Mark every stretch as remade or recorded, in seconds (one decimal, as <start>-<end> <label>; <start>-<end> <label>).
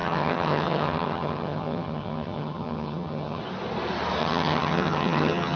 0.0-3.4 remade; 3.4-4.2 recorded; 4.2-5.6 remade